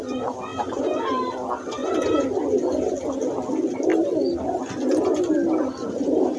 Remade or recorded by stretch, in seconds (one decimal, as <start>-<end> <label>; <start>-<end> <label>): 0.0-6.4 recorded